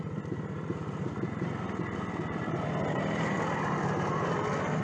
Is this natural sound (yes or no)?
yes